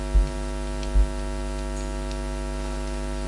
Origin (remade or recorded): recorded